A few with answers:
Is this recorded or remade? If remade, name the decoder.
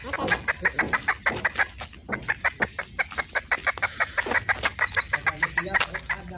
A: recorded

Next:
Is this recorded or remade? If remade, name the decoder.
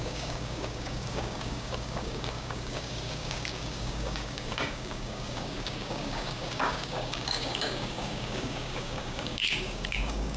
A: remade, codec, DAC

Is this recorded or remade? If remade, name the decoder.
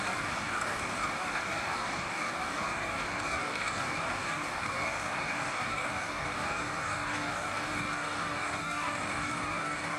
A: remade, codec, DAC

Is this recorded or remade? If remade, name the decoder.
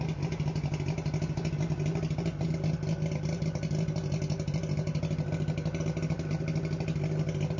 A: recorded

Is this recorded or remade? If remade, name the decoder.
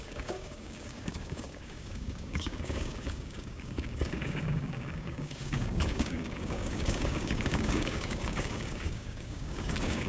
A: remade, codec, DAC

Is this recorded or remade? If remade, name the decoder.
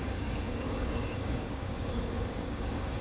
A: remade, codec, DAC